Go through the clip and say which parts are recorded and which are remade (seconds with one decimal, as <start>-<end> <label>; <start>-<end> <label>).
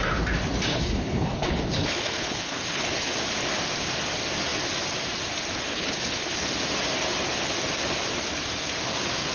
0.0-0.7 recorded; 0.7-3.1 remade; 3.1-5.7 recorded; 5.7-6.5 remade; 6.5-9.3 recorded